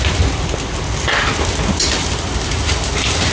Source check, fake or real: real